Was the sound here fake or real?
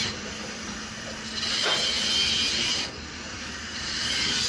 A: fake